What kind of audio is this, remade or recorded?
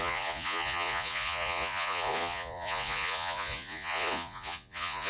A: remade